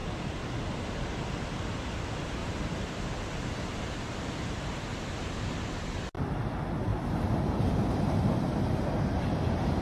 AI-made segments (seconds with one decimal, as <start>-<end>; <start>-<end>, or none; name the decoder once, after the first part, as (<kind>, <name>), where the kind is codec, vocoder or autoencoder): 2.4-3.1 (vocoder, BigVGAN v2); 6.9-9.8